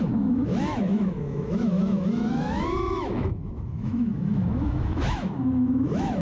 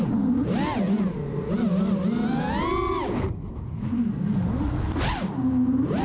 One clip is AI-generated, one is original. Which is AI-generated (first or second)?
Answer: first